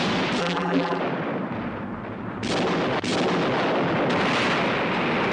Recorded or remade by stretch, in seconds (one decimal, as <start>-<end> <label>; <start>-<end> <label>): 0.0-0.4 recorded; 0.4-1.0 remade; 1.0-5.3 recorded